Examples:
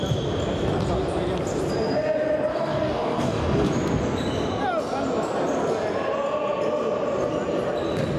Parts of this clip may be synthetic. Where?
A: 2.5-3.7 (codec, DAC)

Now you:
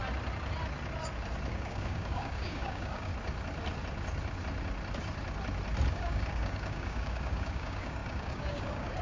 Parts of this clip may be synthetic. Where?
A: 1.5-3.1 (codec, DAC); 5.9-9.0

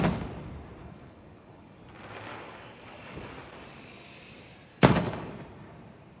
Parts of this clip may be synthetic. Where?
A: 0.8-1.8 (codec, DAC); 2.3-3.3; 4.7-5.3

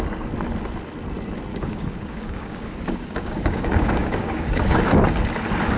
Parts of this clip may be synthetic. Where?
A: 1.5-4.9 (codec, DAC)

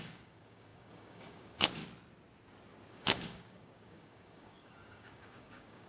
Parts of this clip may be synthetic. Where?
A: 0.0-1.8 (codec, DAC); 2.9-5.9

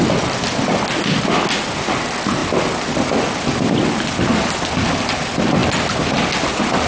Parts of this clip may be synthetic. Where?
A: none